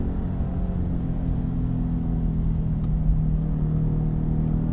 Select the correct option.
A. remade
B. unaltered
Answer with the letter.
B